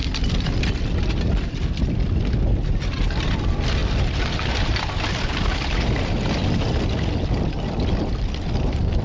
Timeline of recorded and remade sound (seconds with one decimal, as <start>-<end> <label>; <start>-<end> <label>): 0.0-9.0 recorded